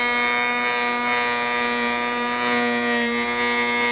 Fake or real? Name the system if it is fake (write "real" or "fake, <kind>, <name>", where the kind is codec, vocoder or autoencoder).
real